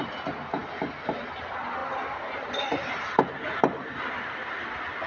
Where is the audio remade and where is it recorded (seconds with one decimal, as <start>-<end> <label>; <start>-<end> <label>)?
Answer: 0.0-5.1 recorded